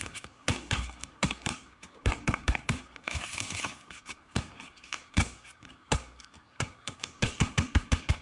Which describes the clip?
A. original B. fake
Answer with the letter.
B